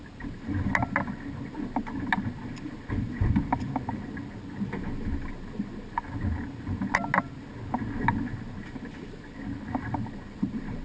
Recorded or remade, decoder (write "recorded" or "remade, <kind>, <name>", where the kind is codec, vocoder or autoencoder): recorded